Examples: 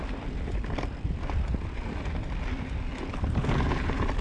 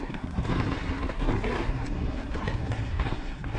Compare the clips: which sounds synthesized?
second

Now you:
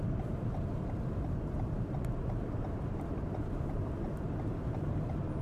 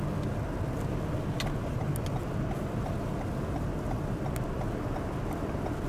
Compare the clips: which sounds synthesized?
first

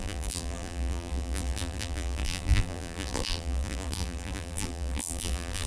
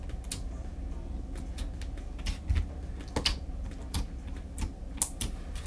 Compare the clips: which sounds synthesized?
first